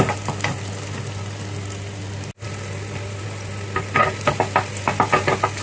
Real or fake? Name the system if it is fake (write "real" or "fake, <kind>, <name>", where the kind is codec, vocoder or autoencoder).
real